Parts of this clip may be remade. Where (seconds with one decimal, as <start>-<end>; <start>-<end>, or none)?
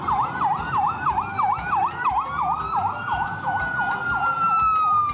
3.1-3.6